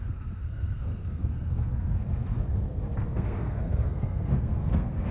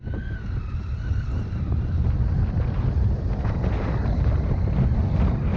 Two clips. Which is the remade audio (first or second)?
first